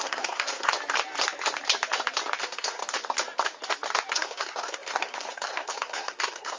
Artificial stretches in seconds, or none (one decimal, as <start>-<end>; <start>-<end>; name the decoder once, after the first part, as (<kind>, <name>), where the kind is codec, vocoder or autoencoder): 0.0-0.7 (codec, SNAC); 2.4-2.8; 4.1-6.6